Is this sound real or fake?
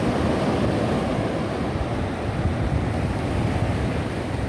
real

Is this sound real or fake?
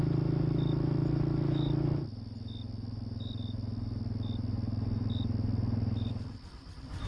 real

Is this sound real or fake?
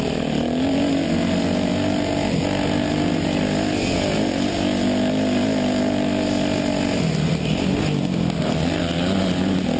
real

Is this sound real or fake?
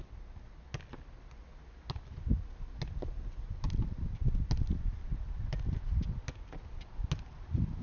real